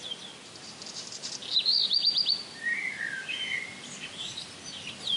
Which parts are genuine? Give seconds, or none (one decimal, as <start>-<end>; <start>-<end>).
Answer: 0.0-5.2